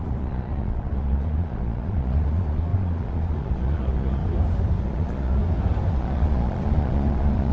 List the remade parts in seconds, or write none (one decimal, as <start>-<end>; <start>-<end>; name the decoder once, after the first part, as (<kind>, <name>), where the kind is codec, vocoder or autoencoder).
0.0-4.2 (vocoder, Vocos); 4.8-5.4; 5.9-7.5